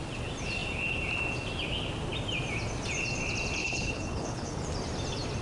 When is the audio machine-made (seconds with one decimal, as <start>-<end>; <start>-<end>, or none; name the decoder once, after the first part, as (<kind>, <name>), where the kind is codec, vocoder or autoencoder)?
3.6-4.6 (codec, HILCodec)